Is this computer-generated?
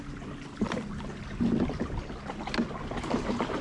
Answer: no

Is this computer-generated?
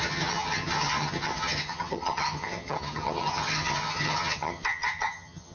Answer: yes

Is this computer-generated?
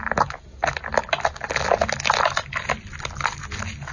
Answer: no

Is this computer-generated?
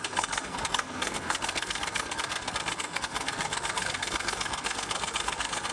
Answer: yes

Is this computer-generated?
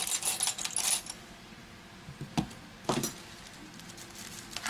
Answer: no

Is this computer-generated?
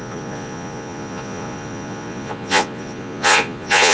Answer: yes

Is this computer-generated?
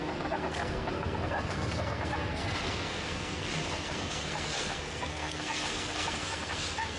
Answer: yes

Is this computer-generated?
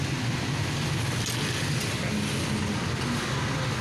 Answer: no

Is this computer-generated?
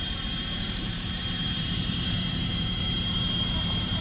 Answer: yes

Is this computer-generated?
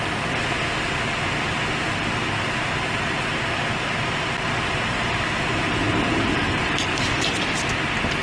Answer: no